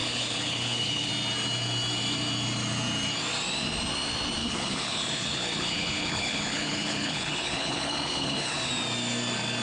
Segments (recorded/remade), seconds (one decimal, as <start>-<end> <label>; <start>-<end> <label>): 0.0-1.1 remade; 1.1-4.4 recorded; 4.4-8.7 remade; 8.7-9.6 recorded